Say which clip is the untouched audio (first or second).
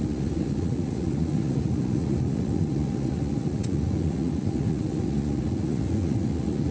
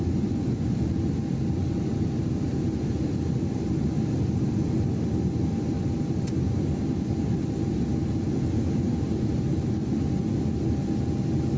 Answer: second